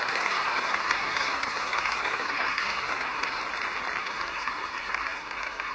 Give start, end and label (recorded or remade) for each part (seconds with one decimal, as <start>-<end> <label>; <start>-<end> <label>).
0.0-3.4 remade; 3.4-4.0 recorded; 4.0-5.7 remade